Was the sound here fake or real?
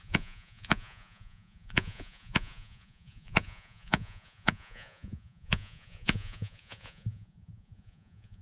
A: fake